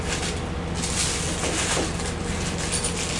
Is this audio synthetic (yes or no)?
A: no